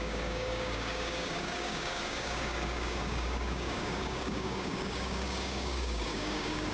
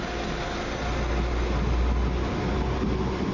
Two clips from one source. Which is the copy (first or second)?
first